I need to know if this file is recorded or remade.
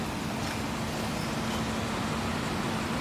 recorded